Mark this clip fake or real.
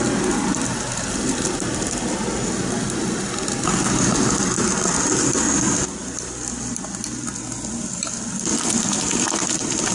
real